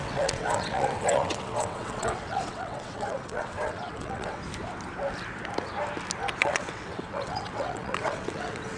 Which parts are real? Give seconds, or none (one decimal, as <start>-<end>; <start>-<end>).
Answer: 4.4-6.4